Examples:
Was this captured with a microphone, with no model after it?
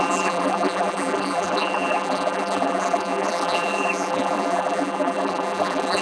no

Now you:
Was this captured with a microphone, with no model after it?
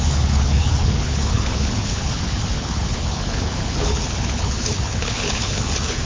no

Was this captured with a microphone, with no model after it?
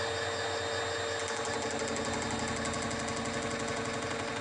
yes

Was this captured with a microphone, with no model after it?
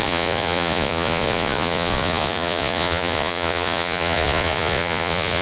no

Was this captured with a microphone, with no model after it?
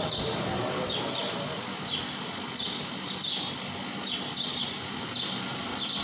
yes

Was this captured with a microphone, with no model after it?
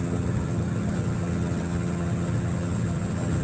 no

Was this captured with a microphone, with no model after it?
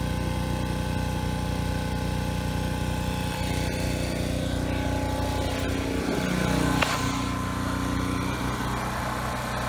yes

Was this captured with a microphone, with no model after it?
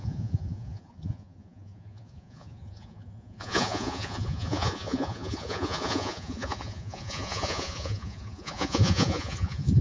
no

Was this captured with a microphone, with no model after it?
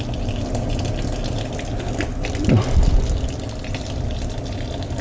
yes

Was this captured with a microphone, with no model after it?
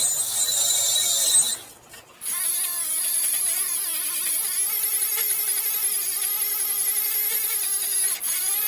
yes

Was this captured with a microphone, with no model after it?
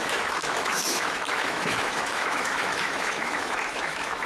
no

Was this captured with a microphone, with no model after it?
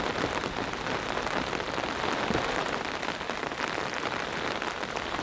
yes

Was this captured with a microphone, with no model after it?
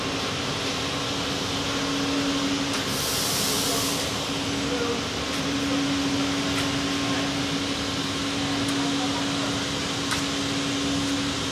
yes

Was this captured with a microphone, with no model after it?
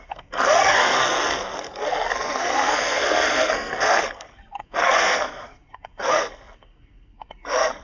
no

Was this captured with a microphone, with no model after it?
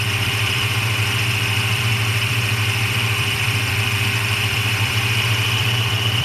no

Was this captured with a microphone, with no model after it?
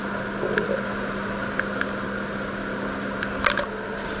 yes